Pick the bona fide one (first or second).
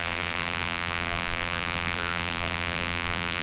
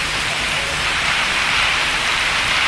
second